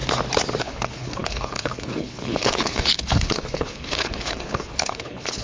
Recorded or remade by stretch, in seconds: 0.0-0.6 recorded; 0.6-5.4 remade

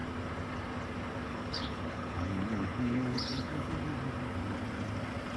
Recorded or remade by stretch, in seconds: 0.0-1.3 recorded; 1.3-3.7 remade; 3.7-5.4 recorded